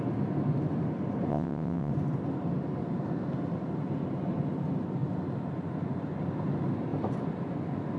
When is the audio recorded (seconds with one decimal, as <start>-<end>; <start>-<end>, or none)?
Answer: 0.0-1.3; 1.9-8.0